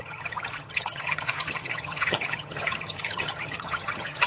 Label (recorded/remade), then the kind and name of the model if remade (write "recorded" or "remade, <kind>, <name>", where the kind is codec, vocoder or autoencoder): remade, vocoder, HiFi-GAN